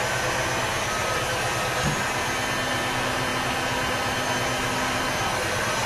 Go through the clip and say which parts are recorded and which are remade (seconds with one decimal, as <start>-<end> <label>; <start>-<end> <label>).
0.0-5.9 recorded